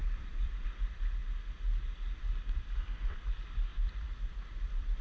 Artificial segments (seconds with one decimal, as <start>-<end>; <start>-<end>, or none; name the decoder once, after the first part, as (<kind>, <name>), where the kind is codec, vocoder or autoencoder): 0.0-1.2 (vocoder, BigVGAN v2); 2.2-3.7; 4.3-5.0